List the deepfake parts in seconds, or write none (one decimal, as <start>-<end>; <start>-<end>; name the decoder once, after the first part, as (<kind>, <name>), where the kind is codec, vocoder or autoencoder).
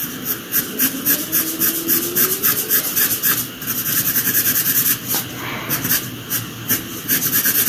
none